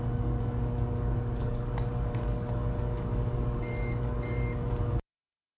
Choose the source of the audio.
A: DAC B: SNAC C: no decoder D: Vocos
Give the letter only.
A